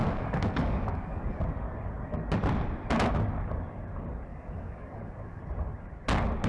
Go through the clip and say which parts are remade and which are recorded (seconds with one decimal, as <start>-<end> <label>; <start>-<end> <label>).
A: 0.0-1.4 remade; 1.4-4.3 recorded; 4.3-5.4 remade; 5.4-6.5 recorded